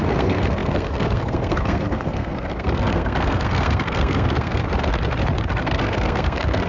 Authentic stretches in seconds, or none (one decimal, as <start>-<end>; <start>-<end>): 4.6-5.5